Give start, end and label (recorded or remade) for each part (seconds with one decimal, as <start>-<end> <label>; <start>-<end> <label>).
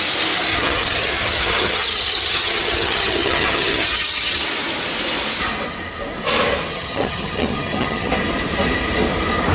0.0-0.5 recorded; 0.5-4.4 remade; 4.4-6.7 recorded; 6.7-8.1 remade; 8.1-9.5 recorded